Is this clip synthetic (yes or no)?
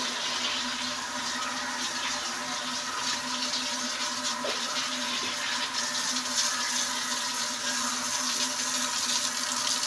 no